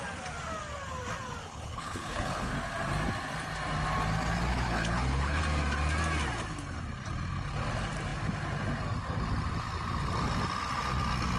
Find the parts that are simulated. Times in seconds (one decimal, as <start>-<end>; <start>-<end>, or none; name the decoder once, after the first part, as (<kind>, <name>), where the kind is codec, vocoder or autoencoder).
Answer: 1.4-2.5 (codec, HILCodec); 4.5-5.4